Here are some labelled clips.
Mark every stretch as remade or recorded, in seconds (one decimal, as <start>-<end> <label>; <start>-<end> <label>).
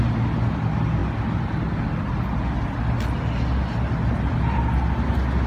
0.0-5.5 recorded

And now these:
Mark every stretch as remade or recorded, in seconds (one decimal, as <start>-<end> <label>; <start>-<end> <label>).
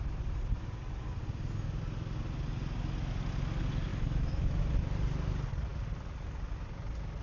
0.0-3.9 recorded; 3.9-4.6 remade; 4.6-7.2 recorded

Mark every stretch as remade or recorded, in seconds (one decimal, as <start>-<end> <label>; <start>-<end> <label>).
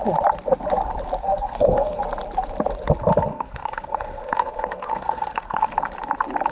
0.0-1.2 recorded; 1.2-2.0 remade; 2.0-3.3 recorded; 3.3-5.7 remade; 5.7-6.5 recorded